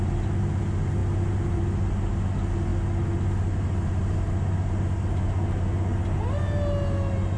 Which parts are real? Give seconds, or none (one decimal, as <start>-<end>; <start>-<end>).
0.0-7.4